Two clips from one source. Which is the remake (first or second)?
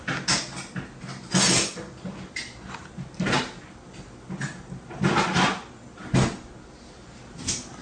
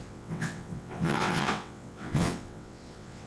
second